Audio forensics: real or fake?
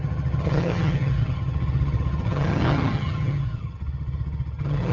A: fake